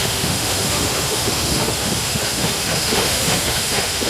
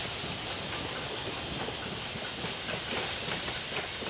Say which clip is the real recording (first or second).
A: second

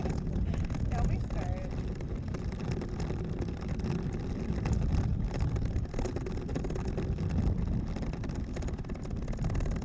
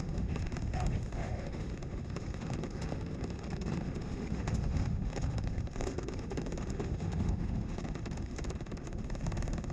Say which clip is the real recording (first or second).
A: first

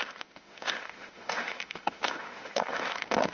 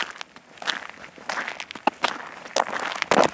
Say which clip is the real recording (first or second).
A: second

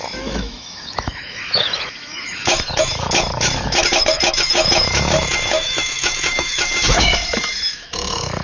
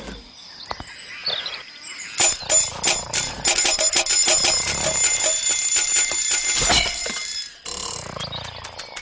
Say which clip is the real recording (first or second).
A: second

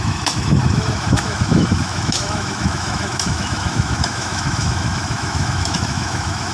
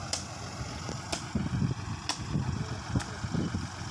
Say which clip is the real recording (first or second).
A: second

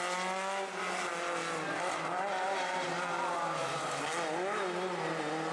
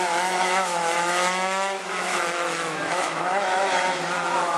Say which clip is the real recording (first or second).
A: first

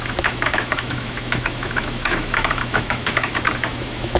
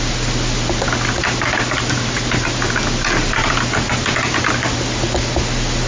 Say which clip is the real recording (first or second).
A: second